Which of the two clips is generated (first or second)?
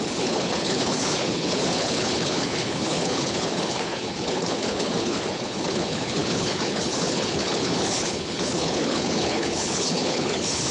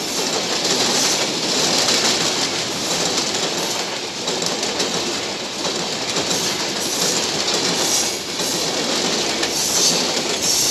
first